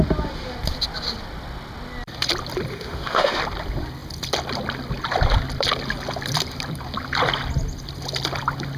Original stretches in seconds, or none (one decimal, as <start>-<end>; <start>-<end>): 0.0-2.7; 3.4-8.8

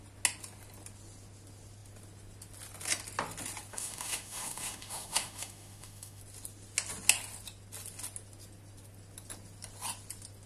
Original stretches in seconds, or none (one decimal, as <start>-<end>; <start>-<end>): 0.0-3.7; 6.2-10.5

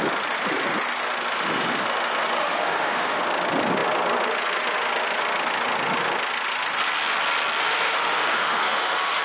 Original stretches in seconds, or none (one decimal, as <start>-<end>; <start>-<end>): 0.0-2.4; 3.2-7.6